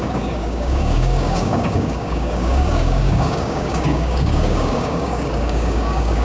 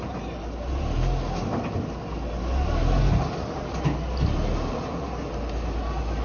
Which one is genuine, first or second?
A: second